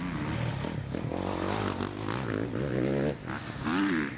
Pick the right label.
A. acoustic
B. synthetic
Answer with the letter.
A